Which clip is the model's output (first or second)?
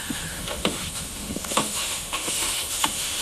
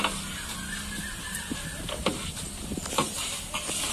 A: first